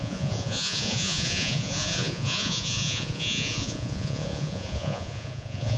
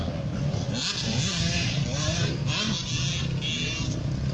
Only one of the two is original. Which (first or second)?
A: second